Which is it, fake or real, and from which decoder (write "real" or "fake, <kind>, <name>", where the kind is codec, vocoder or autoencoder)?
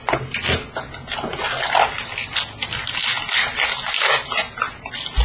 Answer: real